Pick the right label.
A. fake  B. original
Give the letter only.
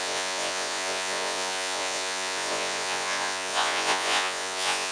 A